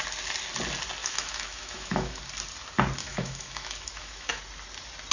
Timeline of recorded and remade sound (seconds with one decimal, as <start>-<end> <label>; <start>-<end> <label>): 0.0-1.0 recorded; 1.0-2.2 remade; 2.2-3.0 recorded; 3.0-4.4 remade; 4.4-5.1 recorded